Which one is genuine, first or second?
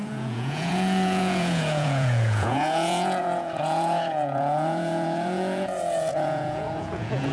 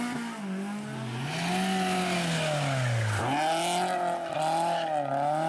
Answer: second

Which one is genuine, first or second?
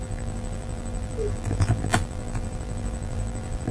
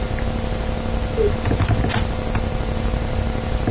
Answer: second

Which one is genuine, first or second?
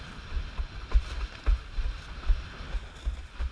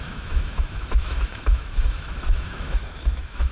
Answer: first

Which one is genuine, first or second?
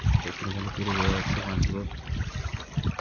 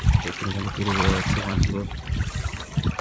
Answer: first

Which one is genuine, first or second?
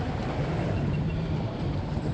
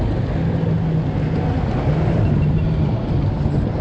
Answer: second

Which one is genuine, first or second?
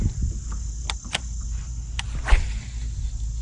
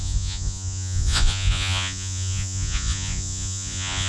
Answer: first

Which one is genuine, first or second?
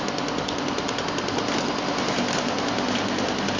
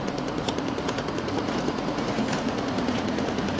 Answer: first